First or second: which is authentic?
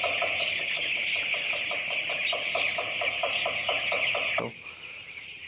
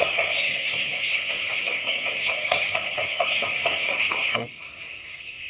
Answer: first